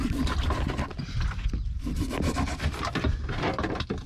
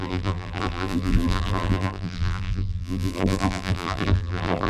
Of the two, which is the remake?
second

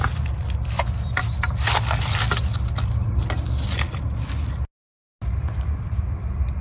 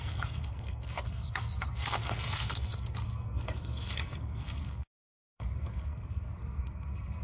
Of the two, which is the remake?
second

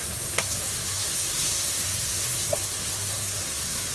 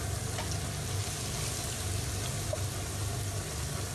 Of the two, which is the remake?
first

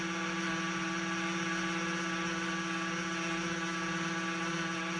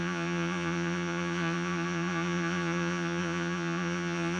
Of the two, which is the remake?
second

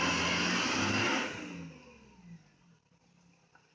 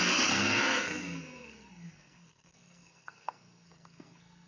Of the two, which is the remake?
second